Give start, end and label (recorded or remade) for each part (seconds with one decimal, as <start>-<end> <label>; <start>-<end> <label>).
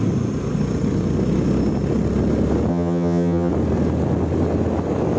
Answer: 0.0-2.7 recorded; 2.7-3.5 remade; 3.5-5.2 recorded